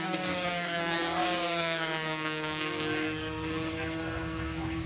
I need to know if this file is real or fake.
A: fake